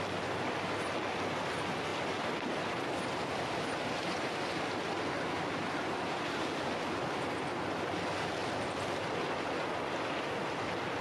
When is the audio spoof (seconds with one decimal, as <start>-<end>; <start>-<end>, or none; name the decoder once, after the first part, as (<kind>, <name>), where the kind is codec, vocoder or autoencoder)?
none